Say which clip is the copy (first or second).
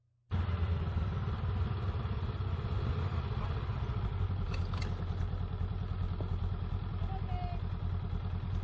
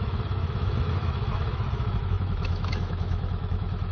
second